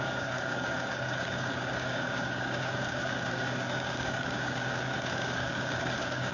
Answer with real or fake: fake